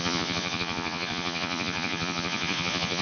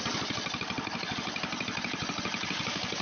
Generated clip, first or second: first